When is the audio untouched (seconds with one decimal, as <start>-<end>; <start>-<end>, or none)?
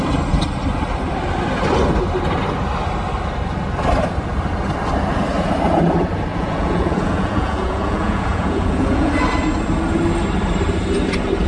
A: 0.0-6.3; 9.1-11.5